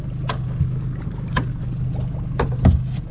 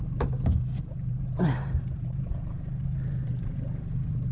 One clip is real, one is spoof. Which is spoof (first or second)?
second